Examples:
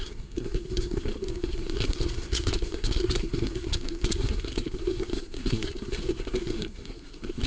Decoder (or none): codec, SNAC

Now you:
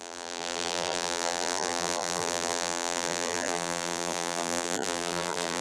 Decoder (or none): vocoder, BigVGAN v2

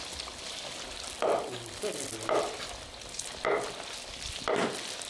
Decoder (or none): none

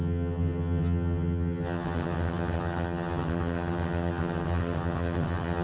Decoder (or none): vocoder, HiFi-GAN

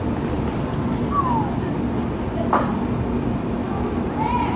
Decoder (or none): none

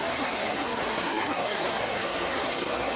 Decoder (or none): codec, SNAC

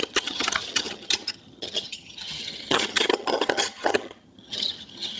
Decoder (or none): vocoder, HiFi-GAN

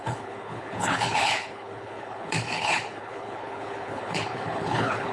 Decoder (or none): codec, HILCodec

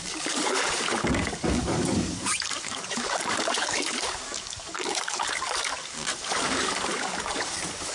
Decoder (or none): codec, DAC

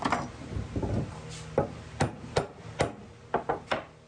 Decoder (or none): none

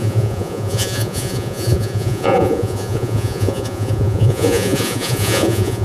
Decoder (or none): vocoder, Vocos